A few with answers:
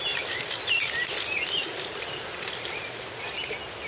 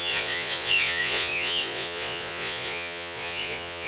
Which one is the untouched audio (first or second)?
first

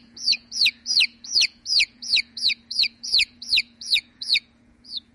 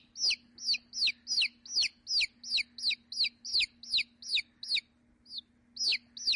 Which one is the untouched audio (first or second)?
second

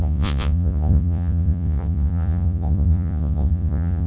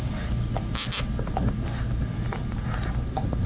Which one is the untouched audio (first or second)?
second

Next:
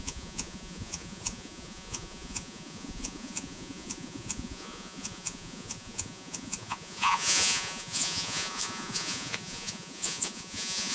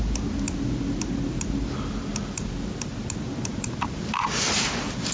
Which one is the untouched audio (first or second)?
second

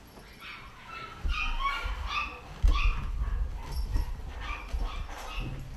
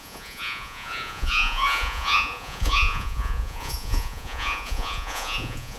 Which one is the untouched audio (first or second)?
first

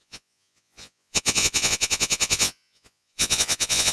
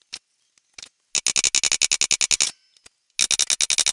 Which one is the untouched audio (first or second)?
second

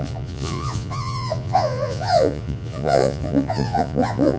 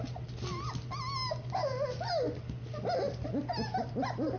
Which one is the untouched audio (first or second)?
second